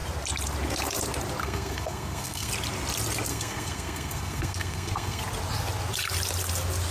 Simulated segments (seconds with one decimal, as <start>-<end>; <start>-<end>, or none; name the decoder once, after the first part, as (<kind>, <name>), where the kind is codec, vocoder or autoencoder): 1.4-2.5 (codec, SNAC); 3.3-5.2

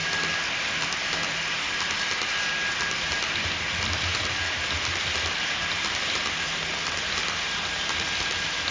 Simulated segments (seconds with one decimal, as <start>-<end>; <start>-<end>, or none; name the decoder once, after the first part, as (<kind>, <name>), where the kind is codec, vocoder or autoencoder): none

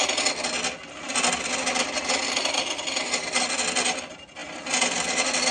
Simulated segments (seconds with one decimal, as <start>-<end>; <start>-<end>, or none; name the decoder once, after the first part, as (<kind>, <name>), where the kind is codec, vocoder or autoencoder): none

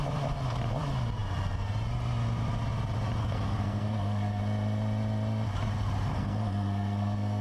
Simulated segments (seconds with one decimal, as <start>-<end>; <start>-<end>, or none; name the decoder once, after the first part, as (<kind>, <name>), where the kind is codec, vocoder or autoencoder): 3.2-4.4 (codec, SNAC); 6.1-7.4

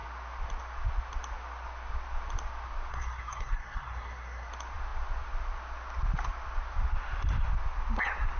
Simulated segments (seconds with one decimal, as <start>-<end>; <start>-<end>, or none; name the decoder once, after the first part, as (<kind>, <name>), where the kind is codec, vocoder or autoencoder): 2.9-4.5 (codec, SNAC)